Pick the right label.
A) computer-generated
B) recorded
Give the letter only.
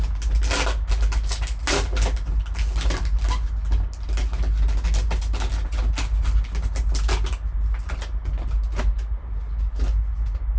B